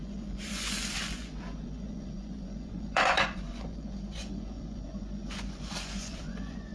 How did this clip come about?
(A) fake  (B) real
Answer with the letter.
A